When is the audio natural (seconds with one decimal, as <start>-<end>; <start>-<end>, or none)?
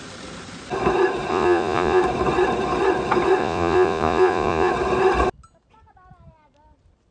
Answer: 0.0-1.3; 2.0-3.4; 4.7-7.1